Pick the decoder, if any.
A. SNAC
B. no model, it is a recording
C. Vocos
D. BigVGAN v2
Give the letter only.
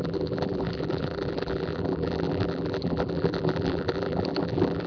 D